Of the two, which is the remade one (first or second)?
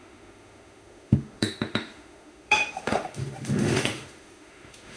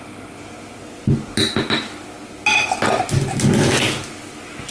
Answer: first